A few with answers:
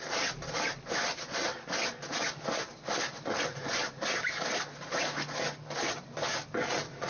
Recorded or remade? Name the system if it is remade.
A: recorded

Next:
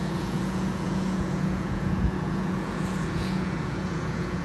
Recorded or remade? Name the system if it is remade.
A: remade, vocoder, Vocos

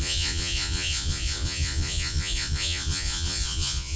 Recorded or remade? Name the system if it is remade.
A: remade, vocoder, Vocos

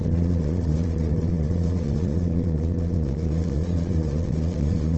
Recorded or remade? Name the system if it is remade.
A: remade, vocoder, Vocos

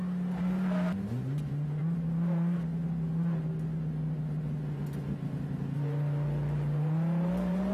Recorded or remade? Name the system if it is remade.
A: recorded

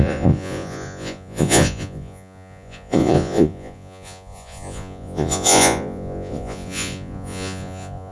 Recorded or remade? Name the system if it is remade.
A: remade, vocoder, Vocos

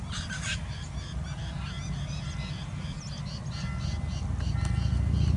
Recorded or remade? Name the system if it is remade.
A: recorded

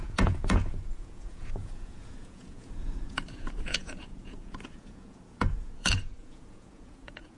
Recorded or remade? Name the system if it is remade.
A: remade, vocoder, Vocos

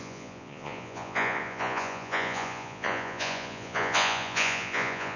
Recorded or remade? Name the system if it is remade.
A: remade, vocoder, Vocos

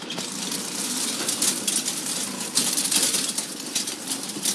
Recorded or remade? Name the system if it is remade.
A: recorded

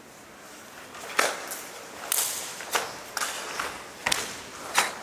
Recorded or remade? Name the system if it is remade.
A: recorded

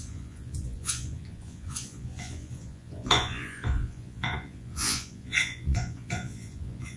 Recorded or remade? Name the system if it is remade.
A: remade, vocoder, Vocos